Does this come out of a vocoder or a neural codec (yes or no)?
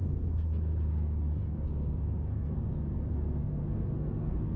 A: yes